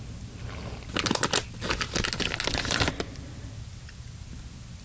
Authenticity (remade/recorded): recorded